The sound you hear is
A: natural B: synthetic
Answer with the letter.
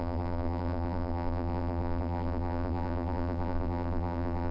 B